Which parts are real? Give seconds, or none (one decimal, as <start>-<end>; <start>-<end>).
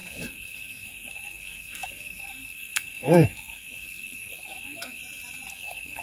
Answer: 5.0-5.5